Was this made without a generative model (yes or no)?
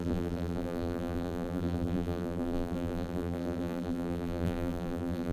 no